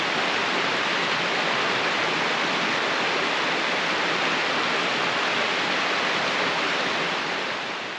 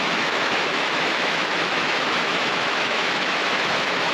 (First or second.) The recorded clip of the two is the first